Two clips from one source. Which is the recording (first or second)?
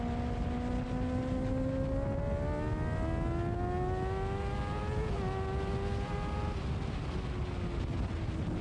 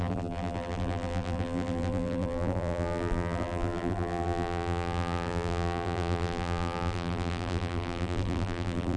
first